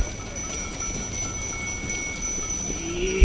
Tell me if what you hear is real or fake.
real